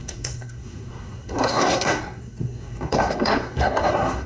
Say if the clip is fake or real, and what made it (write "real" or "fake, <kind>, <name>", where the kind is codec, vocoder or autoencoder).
fake, codec, SNAC